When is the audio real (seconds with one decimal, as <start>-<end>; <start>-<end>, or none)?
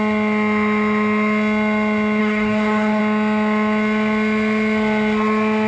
0.0-2.2; 3.0-5.7